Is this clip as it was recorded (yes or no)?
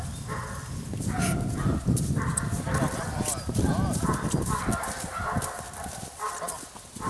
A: yes